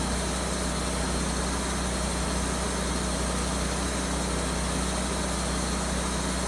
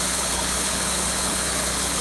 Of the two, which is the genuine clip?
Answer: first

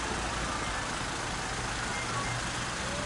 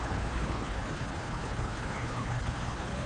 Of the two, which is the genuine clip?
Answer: first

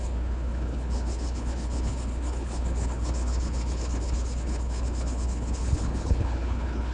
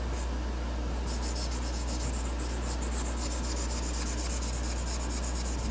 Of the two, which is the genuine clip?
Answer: second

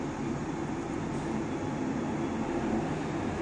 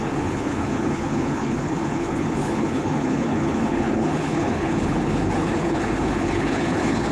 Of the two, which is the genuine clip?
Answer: first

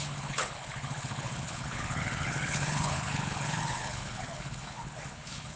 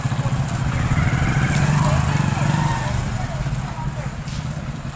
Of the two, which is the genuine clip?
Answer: second